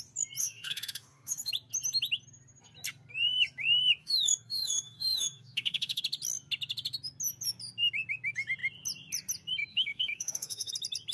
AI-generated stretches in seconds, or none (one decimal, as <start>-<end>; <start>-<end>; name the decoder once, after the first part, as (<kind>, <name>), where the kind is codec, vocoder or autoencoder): 0.4-1.5 (autoencoder, DAC-VAE); 4.0-6.0; 9.7-10.7